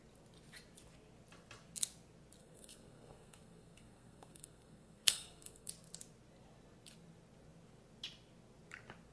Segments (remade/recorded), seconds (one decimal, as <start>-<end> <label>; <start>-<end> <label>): 0.0-2.4 recorded; 2.4-5.7 remade; 5.7-9.1 recorded